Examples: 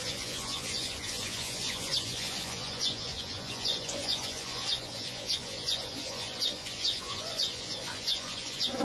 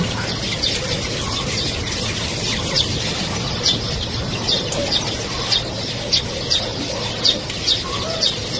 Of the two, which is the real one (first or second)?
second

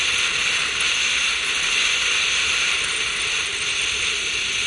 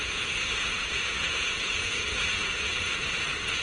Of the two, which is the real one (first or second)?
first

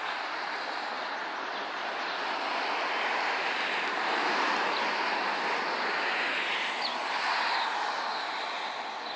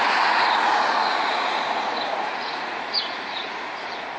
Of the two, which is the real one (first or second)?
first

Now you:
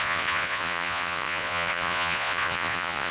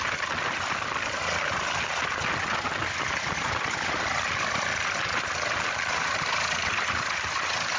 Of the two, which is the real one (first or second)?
second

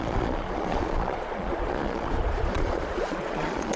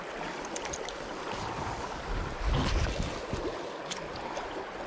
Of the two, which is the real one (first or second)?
second